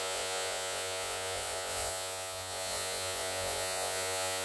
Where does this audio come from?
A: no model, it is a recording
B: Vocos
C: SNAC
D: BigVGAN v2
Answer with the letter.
B